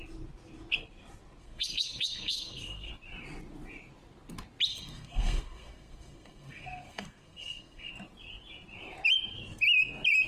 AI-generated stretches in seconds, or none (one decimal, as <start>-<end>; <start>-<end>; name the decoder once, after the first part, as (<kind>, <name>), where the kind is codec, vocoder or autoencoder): 1.4-2.9 (codec, SNAC); 4.7-7.9